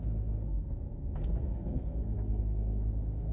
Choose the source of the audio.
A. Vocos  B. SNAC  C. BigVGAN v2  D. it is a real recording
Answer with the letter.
B